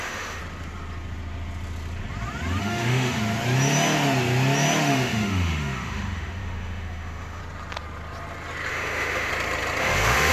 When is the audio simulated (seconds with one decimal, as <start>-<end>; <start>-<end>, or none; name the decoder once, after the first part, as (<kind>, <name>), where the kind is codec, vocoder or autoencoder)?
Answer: 0.0-0.4 (autoencoder, DAC-VAE); 2.6-3.2; 4.8-7.4; 8.7-9.3; 9.8-10.3